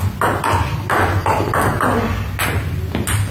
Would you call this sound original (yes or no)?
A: yes